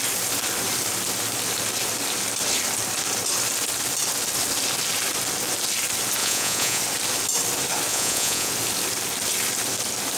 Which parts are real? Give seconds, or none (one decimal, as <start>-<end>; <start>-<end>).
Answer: 0.0-6.2; 6.8-7.9; 8.5-10.2